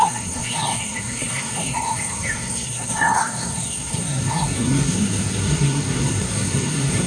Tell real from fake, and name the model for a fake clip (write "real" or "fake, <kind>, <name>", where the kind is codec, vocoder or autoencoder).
fake, codec, SNAC